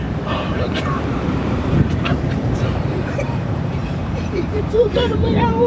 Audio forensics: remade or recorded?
remade